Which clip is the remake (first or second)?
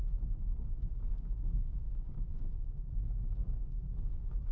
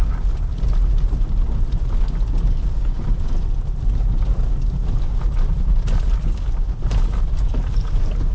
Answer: first